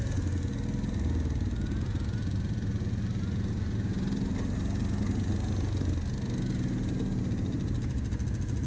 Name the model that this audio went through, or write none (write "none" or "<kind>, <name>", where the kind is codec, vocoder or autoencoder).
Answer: none